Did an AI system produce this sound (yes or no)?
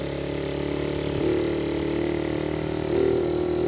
no